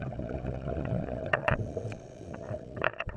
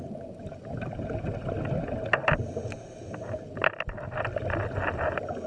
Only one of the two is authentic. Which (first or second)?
second